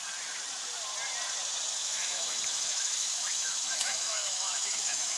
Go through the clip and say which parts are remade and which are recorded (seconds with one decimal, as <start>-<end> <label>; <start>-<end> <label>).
0.0-1.8 recorded; 1.8-5.2 remade